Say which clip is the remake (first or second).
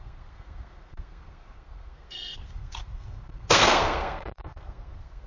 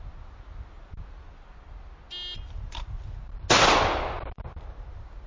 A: first